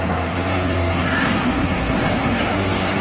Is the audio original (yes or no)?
no